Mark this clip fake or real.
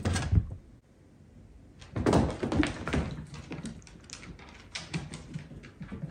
real